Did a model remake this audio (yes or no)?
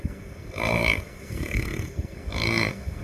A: yes